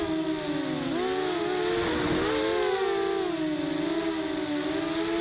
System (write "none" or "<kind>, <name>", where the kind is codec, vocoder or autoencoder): none